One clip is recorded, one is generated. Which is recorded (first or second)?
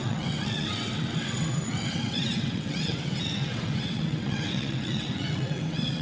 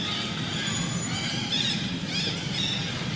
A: second